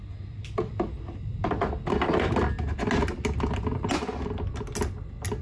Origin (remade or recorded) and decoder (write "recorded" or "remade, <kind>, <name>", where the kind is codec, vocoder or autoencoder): recorded